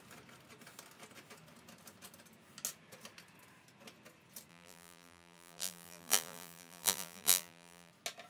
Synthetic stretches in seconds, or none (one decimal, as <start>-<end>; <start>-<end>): 4.5-7.9